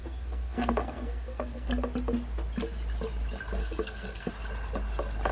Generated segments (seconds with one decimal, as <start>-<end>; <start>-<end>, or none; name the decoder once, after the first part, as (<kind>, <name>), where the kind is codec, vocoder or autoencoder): 0.0-1.7 (codec, SNAC); 3.6-4.3